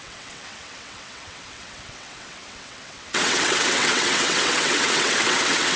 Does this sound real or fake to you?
fake